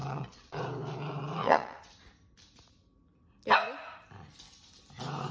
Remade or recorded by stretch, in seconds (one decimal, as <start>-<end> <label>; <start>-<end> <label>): 0.0-0.6 remade; 0.6-1.4 recorded; 1.4-1.9 remade; 1.9-5.3 recorded